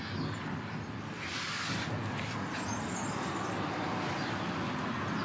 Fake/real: real